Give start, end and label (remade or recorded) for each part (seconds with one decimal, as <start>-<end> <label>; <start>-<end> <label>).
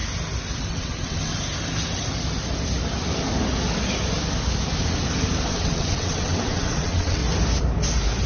0.0-0.7 recorded; 0.7-1.3 remade; 1.3-5.5 recorded; 5.5-7.2 remade; 7.2-8.3 recorded